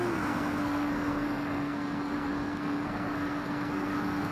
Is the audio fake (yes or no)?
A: yes